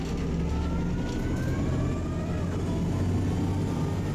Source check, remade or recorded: recorded